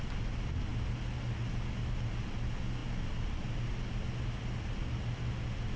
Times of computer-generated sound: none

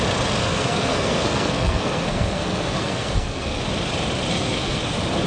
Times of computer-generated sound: 0.4-3.6; 4.3-4.8

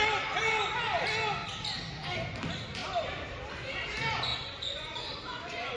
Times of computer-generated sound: 4.3-5.8

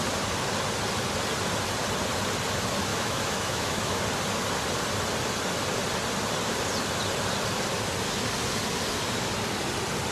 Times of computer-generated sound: 2.9-4.0

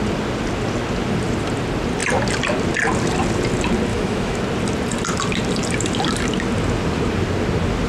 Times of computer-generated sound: 3.9-4.4

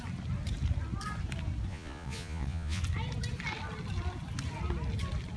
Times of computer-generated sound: 1.7-2.8